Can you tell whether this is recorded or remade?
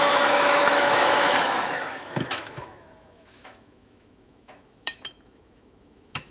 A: remade